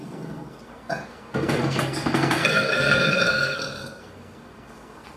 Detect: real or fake fake